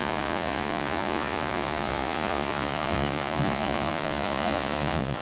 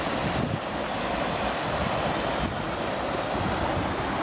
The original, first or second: second